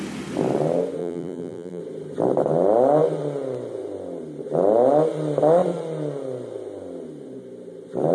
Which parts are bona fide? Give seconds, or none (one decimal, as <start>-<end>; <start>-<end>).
0.0-1.0; 1.8-8.1